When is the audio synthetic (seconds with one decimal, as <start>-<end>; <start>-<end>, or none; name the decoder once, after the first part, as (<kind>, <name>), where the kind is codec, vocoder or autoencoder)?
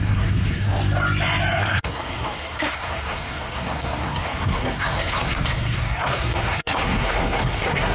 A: 0.0-0.8 (codec, SNAC); 1.6-7.9